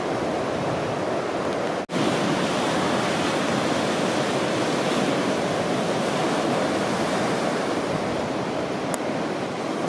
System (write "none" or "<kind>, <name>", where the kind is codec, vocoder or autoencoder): none